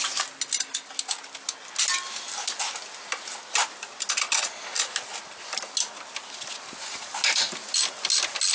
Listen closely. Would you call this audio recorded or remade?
recorded